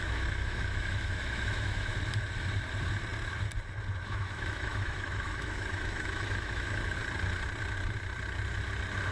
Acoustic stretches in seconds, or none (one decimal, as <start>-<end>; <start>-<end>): 1.9-4.1; 7.0-9.1